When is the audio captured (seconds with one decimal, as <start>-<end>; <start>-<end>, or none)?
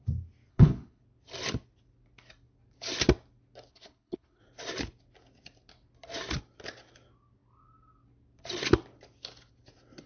0.0-0.5; 1.0-3.7; 4.4-10.1